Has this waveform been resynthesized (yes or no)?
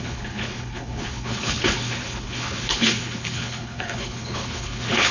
yes